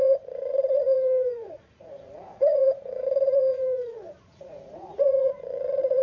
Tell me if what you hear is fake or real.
fake